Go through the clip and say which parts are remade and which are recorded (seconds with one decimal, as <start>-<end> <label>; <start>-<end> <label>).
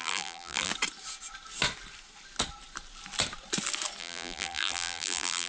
0.0-0.7 remade; 0.7-4.0 recorded; 4.0-5.5 remade